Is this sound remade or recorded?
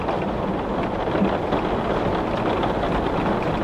recorded